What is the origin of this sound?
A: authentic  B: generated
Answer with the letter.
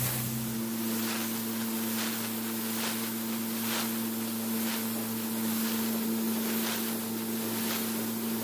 A